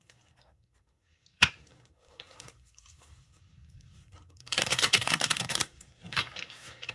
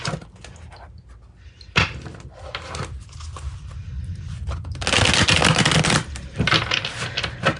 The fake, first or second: first